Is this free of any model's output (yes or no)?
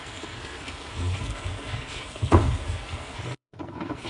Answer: no